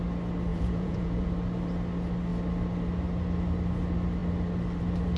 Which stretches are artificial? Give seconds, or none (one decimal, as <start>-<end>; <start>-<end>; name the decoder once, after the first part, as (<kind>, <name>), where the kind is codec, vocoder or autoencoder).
0.5-1.3 (vocoder, Vocos)

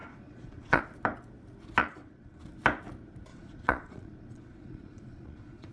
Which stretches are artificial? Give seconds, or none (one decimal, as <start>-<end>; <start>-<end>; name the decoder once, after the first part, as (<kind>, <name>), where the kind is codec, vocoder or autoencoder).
0.0-0.8 (vocoder, Vocos); 1.8-2.4; 3.3-5.7

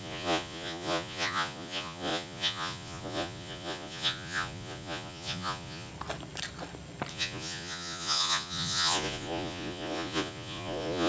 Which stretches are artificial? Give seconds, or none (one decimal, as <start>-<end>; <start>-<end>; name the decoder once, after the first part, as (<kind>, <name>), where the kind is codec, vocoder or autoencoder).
0.0-5.9 (vocoder, Vocos); 7.1-11.1

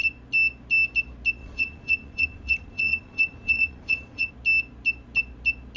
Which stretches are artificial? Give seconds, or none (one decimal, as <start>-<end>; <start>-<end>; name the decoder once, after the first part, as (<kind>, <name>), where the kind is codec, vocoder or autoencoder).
1.4-4.3 (vocoder, Vocos)

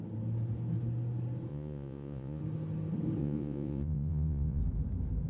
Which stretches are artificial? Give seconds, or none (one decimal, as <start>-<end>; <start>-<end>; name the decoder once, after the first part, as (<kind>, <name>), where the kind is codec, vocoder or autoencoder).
1.5-2.4 (vocoder, Vocos); 3.2-4.6